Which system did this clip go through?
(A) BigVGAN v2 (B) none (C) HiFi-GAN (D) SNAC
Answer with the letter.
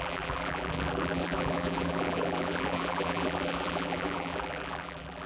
A